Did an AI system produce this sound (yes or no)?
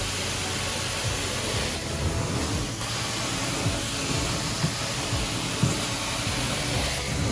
no